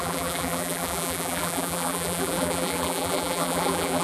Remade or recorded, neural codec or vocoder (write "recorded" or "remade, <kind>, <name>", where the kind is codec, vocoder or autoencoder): remade, vocoder, BigVGAN v2